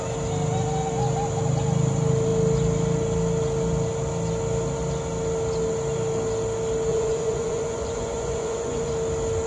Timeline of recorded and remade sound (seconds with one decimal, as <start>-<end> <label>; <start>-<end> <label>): 0.0-6.9 recorded; 6.9-8.9 remade; 8.9-9.5 recorded